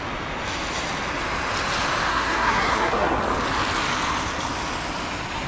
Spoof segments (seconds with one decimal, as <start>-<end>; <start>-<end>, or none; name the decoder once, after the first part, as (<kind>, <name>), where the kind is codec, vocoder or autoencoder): 2.1-3.2 (codec, SNAC)